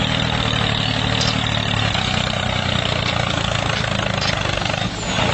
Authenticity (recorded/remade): recorded